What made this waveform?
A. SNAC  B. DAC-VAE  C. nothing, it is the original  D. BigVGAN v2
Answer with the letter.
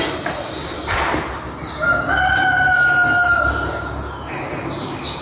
C